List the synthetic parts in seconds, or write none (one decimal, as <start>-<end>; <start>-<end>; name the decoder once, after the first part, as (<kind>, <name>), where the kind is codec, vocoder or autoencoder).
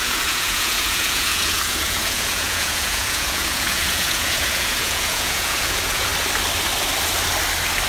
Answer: 0.0-6.1 (vocoder, Vocos)